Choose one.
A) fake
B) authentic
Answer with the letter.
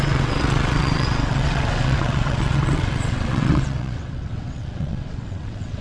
A